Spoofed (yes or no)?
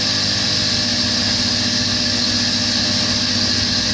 no